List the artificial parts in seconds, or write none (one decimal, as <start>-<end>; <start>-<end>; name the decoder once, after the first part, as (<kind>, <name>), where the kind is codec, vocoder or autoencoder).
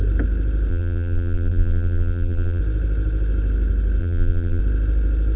0.7-2.6 (vocoder, BigVGAN v2); 4.0-4.6